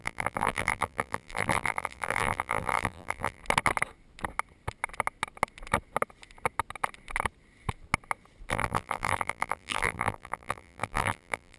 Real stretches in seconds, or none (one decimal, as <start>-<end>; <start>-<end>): 3.4-8.5